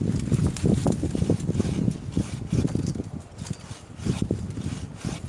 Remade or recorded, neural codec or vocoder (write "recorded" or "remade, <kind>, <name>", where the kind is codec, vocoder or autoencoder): recorded